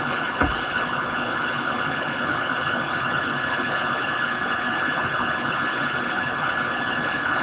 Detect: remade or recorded remade